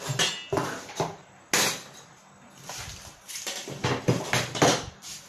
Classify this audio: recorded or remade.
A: recorded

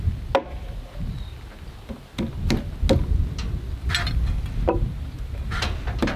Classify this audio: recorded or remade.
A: recorded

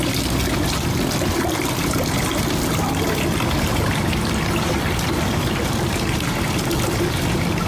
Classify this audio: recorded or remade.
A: recorded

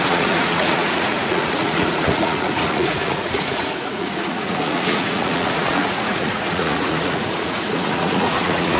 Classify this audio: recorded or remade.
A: remade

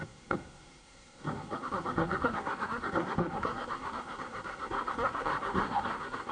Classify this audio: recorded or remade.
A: remade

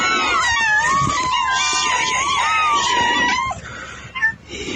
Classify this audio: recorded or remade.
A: recorded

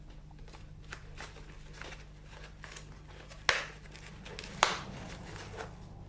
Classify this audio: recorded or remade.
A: recorded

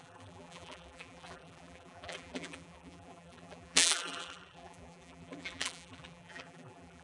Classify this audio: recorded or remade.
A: remade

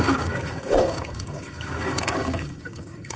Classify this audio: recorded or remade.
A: remade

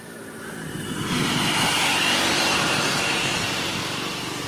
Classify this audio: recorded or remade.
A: remade